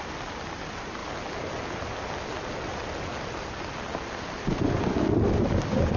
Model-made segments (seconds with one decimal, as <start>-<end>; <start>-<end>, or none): none